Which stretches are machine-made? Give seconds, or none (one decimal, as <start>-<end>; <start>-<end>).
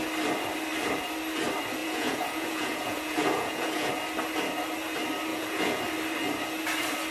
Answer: 1.8-3.9; 5.3-5.8